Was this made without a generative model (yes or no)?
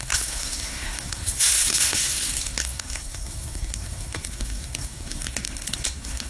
no